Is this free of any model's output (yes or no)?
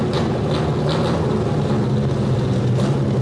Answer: yes